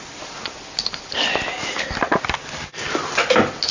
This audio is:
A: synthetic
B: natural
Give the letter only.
B